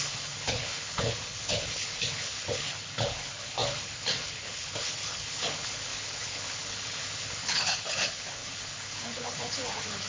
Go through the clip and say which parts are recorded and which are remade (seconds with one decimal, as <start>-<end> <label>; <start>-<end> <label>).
0.0-10.1 remade